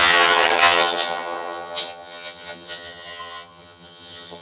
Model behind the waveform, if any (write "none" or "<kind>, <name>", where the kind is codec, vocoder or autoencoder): vocoder, HiFi-GAN